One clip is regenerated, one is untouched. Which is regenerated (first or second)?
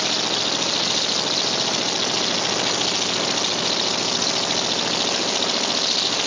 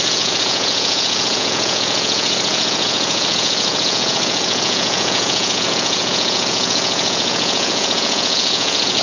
second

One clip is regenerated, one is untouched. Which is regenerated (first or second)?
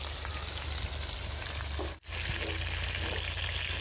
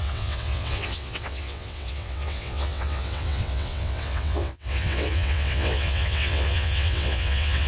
second